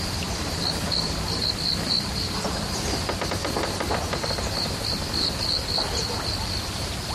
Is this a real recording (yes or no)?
no